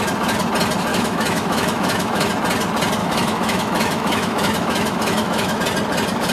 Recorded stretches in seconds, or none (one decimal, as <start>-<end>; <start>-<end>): 0.0-0.9; 2.3-3.0; 5.6-6.3